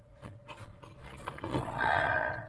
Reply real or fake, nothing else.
fake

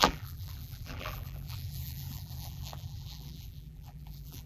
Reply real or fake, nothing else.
fake